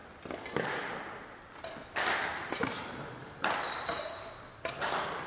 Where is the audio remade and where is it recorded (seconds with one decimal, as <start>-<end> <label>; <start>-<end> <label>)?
0.0-2.4 recorded; 2.4-4.3 remade; 4.3-5.3 recorded